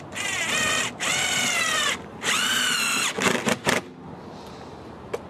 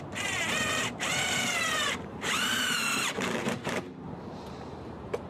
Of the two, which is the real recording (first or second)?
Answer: first